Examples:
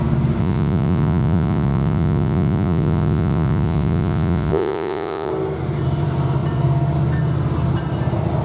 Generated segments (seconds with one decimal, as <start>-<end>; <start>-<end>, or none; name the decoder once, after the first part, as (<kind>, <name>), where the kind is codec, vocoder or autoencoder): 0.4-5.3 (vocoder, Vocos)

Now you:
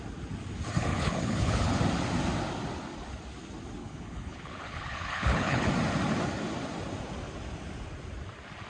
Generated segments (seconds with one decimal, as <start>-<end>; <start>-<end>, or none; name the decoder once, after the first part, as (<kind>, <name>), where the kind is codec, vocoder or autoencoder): 0.9-1.8 (codec, HILCodec); 3.8-5.7

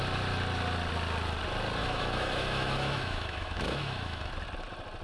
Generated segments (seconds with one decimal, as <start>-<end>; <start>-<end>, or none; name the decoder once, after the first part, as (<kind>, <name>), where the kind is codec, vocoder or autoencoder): 1.8-4.3 (autoencoder, DAC-VAE)

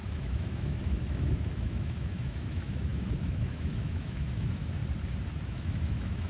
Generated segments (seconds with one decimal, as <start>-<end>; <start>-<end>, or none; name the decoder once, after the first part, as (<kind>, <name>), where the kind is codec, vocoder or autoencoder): 0.0-4.8 (autoencoder, DAC-VAE); 5.4-6.3

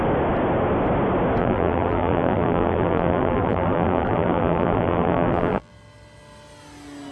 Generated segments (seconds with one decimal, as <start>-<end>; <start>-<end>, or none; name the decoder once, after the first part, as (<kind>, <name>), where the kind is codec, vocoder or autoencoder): 1.4-5.7 (vocoder, BigVGAN v2)

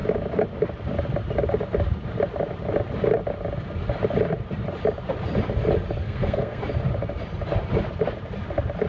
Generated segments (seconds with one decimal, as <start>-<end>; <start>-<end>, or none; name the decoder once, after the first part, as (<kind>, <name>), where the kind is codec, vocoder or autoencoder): 6.0-6.6 (codec, SNAC)